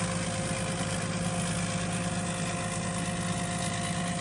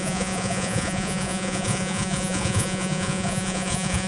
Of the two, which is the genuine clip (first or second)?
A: first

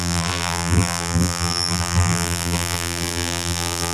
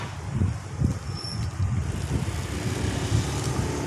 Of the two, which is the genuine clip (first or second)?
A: second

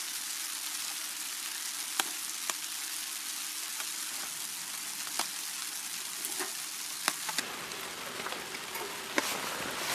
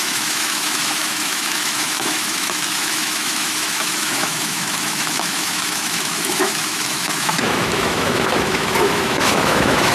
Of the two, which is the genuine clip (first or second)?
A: first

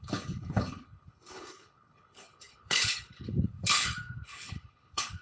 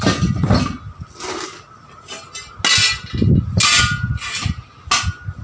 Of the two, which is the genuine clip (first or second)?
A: second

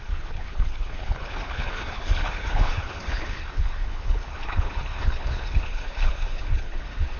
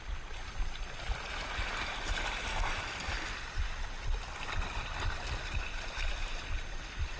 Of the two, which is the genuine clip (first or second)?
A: second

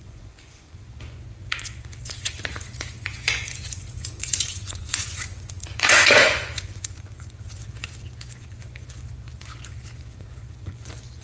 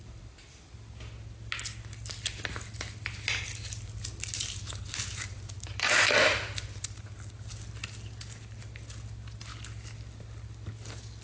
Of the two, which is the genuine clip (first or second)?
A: second